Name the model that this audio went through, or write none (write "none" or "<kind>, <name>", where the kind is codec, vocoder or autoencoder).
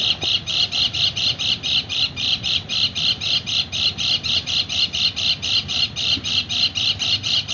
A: none